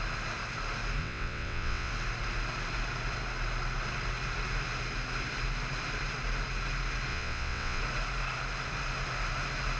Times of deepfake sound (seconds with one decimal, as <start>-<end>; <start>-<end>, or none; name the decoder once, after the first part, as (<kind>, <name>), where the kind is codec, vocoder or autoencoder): 1.0-1.9 (vocoder, WaveNeXt); 7.1-7.8